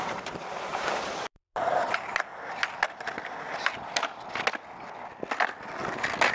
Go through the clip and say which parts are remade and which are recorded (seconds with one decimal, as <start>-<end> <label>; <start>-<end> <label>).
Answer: 0.0-2.3 remade; 2.3-6.3 recorded